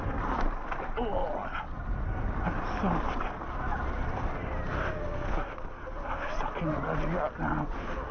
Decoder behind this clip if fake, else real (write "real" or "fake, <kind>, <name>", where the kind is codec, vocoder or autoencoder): real